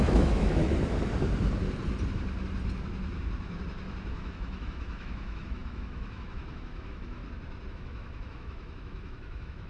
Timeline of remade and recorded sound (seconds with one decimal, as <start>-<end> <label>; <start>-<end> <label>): 0.0-0.6 remade; 0.6-4.1 recorded; 4.1-7.2 remade; 7.2-7.7 recorded; 7.7-9.7 remade